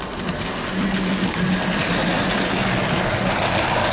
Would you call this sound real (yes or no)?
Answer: yes